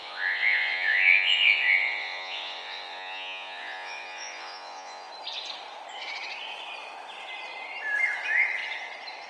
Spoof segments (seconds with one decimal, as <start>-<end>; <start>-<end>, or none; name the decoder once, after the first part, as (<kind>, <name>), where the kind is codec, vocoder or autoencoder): 0.0-5.1 (vocoder, Vocos)

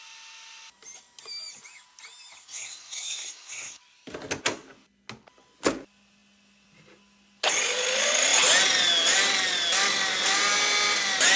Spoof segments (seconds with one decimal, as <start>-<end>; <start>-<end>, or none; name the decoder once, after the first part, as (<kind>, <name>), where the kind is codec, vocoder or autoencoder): 2.4-3.8 (codec, SNAC)

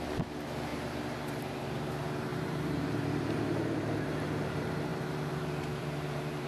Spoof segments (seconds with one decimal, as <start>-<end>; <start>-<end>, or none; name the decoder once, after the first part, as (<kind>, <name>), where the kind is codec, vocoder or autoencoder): 0.0-6.5 (vocoder, BigVGAN v2)

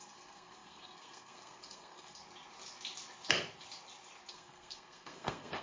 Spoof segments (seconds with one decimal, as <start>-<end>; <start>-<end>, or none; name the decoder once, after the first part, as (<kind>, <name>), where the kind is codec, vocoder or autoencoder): 0.0-2.2 (codec, SNAC); 4.3-5.6